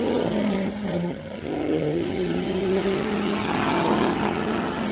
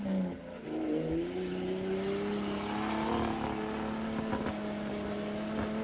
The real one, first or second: second